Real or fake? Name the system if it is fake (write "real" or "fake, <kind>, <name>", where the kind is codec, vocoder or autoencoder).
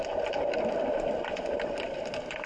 real